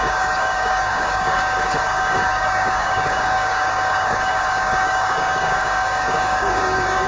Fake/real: fake